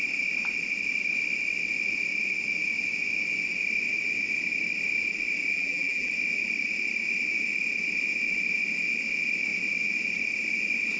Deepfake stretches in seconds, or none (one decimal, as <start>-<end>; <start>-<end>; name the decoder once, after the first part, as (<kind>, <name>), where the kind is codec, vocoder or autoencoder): 5.5-6.1 (vocoder, BigVGAN v2)

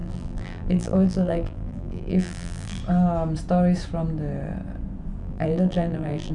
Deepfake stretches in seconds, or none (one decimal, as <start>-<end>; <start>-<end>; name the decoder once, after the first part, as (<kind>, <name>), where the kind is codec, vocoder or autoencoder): 0.0-2.8 (vocoder, BigVGAN v2); 5.2-6.3

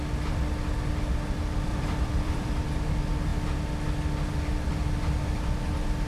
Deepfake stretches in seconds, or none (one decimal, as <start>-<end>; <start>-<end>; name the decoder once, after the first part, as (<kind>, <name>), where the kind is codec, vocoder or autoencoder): 1.7-2.5 (vocoder, BigVGAN v2)

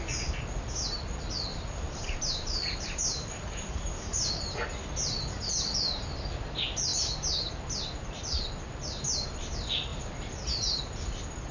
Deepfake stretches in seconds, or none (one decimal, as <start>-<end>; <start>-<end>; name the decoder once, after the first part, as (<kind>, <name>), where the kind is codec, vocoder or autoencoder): 1.5-4.3 (vocoder, BigVGAN v2); 9.9-10.8

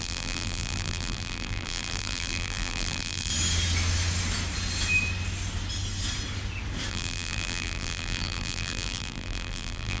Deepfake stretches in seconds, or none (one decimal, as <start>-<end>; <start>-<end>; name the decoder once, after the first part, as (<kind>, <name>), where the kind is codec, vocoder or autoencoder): 0.0-3.3 (vocoder, BigVGAN v2); 6.9-10.0

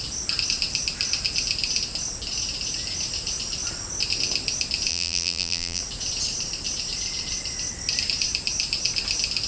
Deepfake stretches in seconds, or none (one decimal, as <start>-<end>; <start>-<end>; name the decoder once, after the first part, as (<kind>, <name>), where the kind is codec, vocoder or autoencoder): 4.9-5.8 (vocoder, BigVGAN v2)